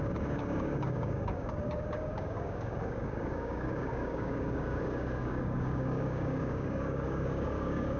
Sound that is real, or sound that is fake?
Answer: fake